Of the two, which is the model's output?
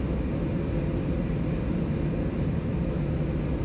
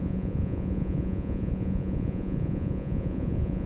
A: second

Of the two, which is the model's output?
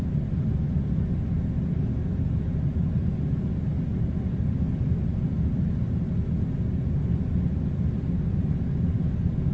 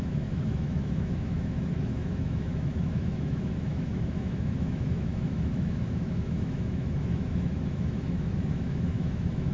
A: second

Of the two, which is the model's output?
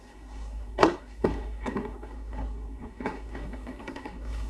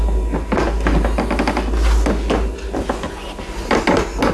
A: first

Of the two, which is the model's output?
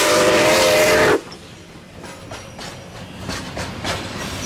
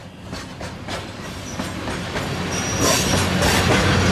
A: first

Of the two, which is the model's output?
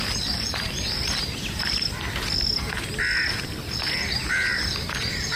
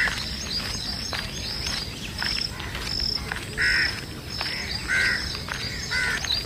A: first